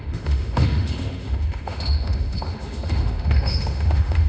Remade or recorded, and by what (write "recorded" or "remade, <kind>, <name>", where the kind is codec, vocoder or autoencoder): remade, autoencoder, DAC-VAE